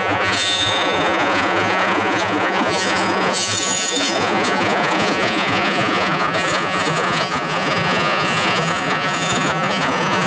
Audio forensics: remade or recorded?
remade